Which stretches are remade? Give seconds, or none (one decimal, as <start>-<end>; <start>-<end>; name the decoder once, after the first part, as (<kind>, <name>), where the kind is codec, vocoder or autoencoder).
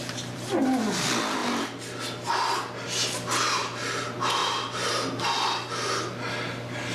0.0-0.5 (vocoder, BigVGAN v2); 4.4-4.9